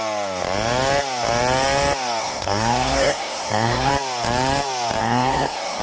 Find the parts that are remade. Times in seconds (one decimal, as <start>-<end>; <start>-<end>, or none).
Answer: 2.2-3.9; 5.0-5.8